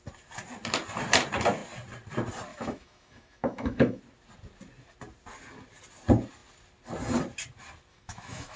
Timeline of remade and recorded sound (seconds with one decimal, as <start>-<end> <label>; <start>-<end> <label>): 0.0-2.5 recorded; 2.5-4.0 remade; 4.0-7.9 recorded; 7.9-8.6 remade